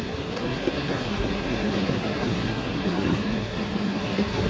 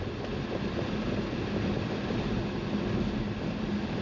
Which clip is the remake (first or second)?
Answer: first